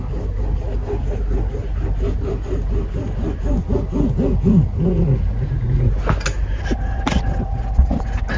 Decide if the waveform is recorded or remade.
recorded